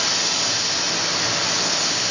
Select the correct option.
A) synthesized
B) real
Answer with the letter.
B